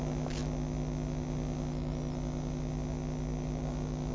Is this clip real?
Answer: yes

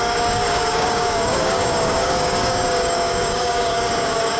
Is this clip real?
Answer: no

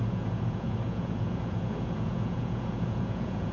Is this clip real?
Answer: no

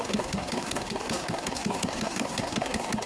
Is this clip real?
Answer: no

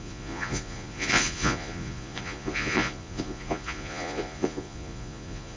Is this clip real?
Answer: no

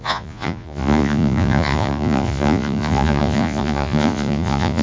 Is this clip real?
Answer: no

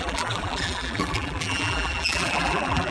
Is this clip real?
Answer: no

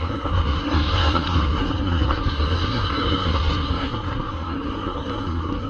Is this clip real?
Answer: no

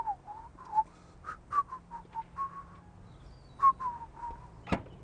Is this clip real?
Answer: yes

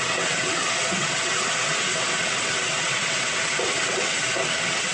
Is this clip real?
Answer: no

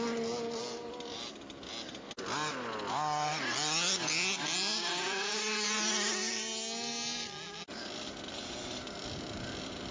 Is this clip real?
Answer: yes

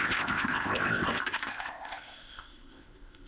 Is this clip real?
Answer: no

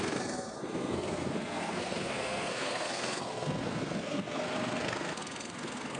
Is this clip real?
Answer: no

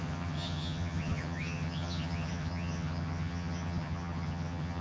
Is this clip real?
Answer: no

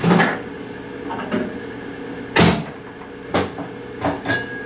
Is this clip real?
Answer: yes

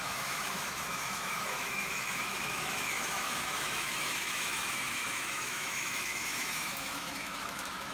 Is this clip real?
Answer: no